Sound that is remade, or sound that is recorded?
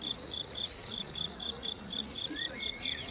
remade